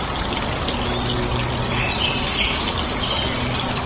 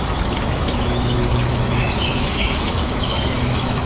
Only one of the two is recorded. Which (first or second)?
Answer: first